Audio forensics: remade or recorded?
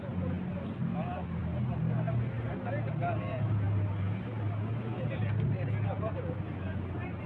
recorded